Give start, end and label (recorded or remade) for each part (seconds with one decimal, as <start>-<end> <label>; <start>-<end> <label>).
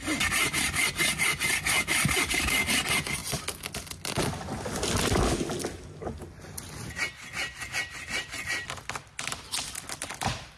0.0-10.6 recorded